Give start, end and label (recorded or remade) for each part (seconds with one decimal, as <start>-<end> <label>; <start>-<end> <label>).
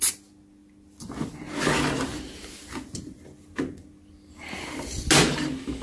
0.0-5.8 recorded